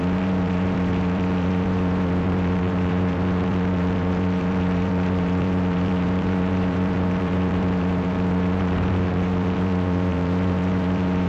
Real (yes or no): no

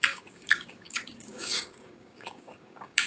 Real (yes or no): no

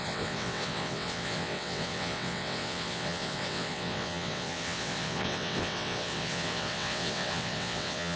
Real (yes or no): no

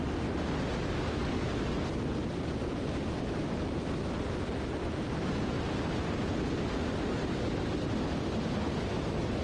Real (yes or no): yes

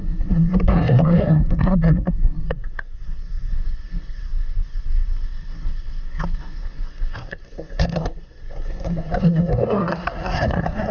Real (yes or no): no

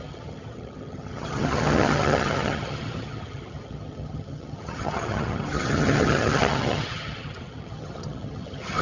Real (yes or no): no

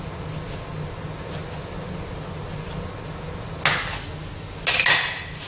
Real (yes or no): yes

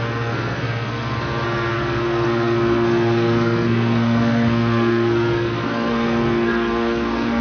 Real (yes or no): no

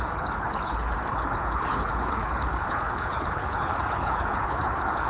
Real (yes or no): no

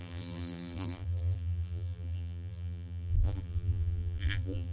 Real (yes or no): no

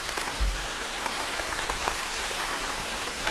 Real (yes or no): no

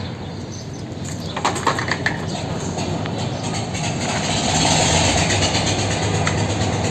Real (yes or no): yes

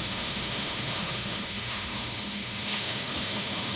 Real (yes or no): no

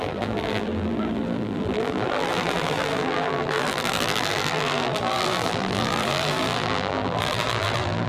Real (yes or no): no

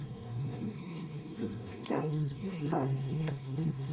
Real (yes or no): no